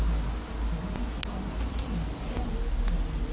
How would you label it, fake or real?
real